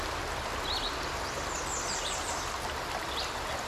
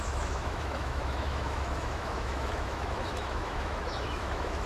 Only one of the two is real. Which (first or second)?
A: first